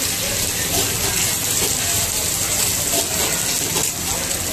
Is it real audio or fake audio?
real